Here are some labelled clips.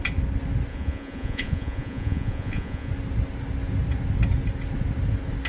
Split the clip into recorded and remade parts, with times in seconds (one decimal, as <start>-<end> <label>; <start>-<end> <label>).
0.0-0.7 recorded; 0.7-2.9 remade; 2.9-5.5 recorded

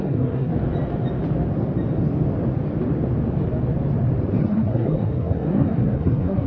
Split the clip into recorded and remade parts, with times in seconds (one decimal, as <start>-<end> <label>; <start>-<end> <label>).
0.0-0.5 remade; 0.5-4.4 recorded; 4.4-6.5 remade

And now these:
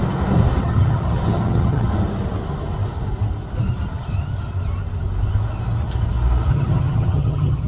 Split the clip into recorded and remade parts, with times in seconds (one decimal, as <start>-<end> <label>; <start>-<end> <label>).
0.0-0.6 recorded; 0.6-1.9 remade; 1.9-6.5 recorded; 6.5-7.7 remade

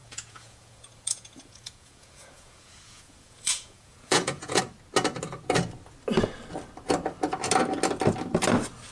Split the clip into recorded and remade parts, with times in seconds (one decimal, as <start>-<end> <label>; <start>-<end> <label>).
0.0-4.6 remade; 4.6-8.9 recorded

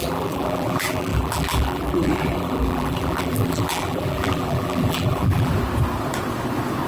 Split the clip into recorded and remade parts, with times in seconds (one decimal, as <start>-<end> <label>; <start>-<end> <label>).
0.0-5.5 remade; 5.5-6.9 recorded

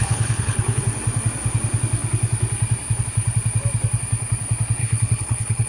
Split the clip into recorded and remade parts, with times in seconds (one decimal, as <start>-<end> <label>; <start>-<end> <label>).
0.0-0.8 remade; 0.8-4.8 recorded; 4.8-5.7 remade